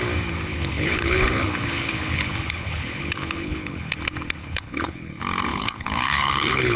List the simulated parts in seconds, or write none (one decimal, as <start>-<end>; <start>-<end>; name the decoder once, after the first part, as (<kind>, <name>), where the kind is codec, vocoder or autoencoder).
0.5-3.9 (codec, HILCodec); 4.4-5.1; 5.5-6.8